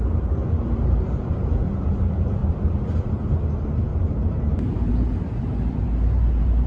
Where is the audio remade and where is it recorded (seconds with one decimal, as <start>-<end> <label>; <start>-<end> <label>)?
0.0-2.4 remade; 2.4-3.2 recorded; 3.2-6.7 remade